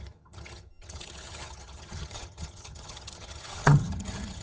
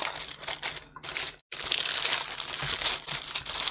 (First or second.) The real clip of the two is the second